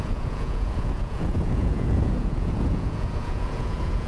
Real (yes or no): no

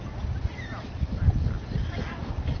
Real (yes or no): yes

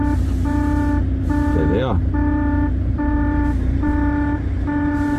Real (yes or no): no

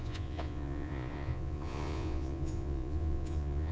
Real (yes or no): no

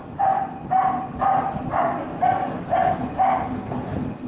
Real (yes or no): yes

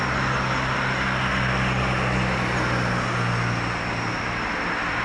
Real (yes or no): yes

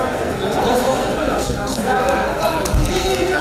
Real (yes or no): no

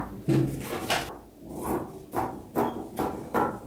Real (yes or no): yes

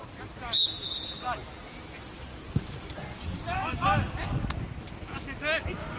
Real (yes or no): yes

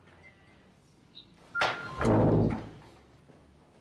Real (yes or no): yes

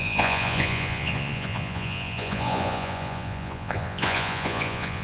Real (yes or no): no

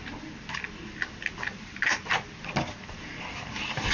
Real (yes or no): yes